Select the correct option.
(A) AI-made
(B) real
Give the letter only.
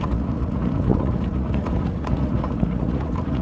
A